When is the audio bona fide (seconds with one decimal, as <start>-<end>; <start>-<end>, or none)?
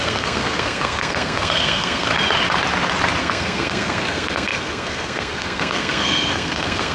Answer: 2.1-3.2